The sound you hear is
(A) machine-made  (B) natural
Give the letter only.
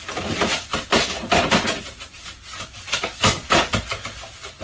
B